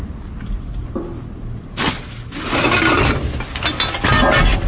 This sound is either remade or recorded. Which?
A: recorded